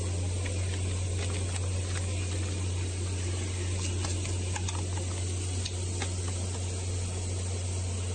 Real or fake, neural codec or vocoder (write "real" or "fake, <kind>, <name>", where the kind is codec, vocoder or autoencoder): real